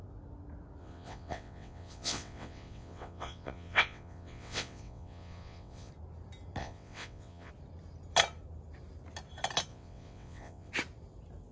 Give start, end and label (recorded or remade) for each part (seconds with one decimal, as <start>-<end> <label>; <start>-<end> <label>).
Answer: 0.0-0.8 recorded; 0.8-5.9 remade; 5.9-6.6 recorded; 6.6-7.5 remade; 7.5-9.7 recorded; 9.7-10.7 remade; 10.7-11.5 recorded